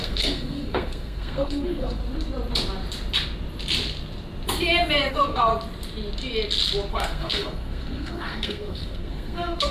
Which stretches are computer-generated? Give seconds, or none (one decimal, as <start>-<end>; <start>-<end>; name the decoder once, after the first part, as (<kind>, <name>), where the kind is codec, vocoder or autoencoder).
0.0-2.0 (codec, SNAC); 5.1-5.5; 6.9-9.7